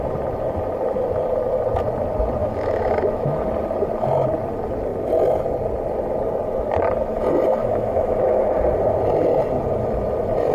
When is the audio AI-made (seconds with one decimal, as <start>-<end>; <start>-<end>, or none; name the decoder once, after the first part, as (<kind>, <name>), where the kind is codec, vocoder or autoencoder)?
2.4-3.4 (autoencoder, DAC-VAE); 7.6-8.5